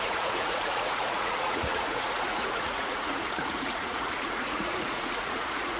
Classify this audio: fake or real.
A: fake